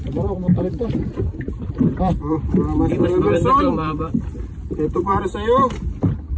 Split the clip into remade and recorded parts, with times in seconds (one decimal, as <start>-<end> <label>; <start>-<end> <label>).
0.0-5.1 remade; 5.1-6.4 recorded